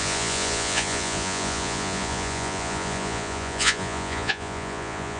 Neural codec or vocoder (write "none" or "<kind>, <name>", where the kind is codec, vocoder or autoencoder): vocoder, Vocos